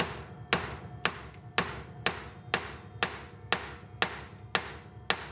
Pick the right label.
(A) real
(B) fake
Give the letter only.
A